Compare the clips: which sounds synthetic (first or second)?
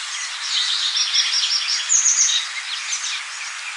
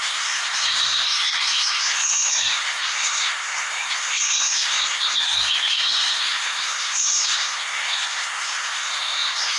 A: second